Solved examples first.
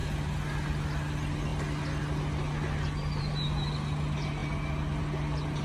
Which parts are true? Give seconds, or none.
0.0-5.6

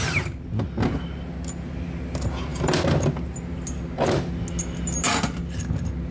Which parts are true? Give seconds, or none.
0.0-6.1

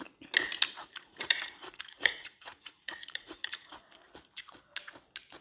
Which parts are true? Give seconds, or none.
0.0-0.8; 4.0-5.4

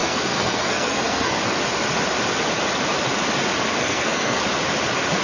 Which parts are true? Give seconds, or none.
1.4-3.8; 4.4-5.2